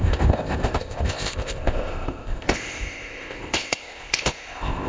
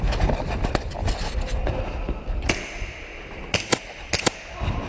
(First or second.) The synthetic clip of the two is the first